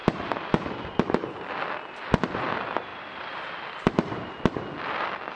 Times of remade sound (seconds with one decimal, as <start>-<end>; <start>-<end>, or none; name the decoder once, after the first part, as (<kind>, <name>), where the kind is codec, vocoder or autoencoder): 2.9-4.2 (vocoder, BigVGAN v2)